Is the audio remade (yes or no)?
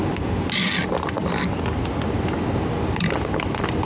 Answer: no